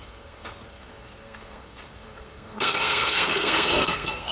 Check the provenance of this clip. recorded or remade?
remade